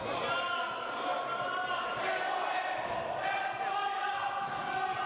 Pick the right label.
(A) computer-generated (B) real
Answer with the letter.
B